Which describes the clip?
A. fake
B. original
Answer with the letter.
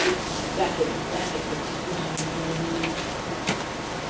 B